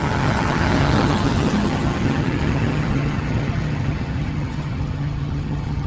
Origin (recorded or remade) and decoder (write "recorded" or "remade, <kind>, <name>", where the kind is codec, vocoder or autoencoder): remade, vocoder, HiFi-GAN